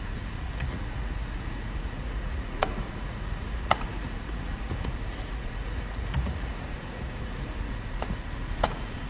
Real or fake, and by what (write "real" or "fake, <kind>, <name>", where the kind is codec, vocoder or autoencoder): fake, vocoder, Vocos